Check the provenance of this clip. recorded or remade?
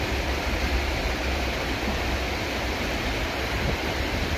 recorded